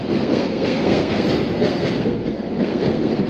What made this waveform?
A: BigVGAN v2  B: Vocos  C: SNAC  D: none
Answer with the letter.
C